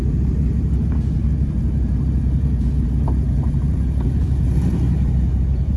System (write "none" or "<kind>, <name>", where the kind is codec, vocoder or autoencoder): vocoder, BigVGAN v2